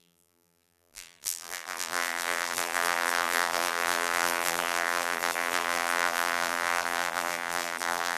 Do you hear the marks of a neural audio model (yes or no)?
yes